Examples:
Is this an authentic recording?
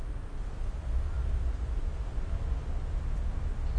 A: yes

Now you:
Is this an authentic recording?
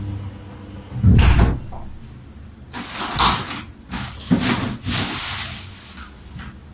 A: yes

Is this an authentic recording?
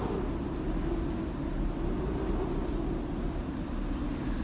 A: yes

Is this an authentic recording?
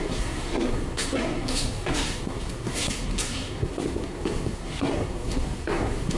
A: no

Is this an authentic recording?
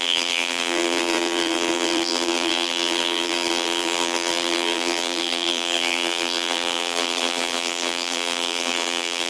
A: no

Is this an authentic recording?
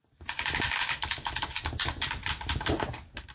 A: yes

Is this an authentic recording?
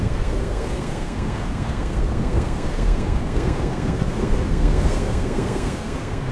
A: no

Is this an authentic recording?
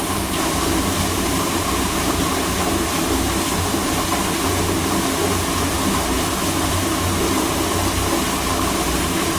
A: yes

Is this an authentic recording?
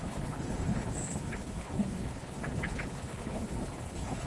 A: no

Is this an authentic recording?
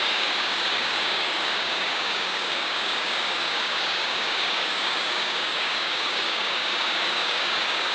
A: no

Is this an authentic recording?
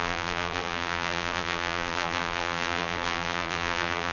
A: no